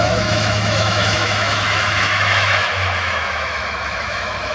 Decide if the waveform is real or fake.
fake